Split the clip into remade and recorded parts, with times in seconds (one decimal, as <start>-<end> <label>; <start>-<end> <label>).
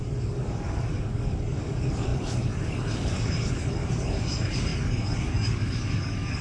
0.0-6.4 remade